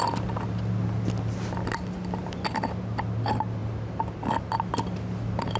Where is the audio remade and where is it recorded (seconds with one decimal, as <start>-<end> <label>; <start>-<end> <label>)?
0.0-5.6 recorded